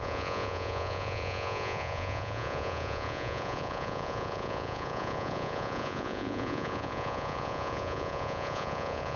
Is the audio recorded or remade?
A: remade